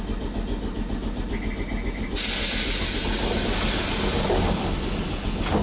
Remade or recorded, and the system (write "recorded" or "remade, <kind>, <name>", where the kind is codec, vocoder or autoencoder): recorded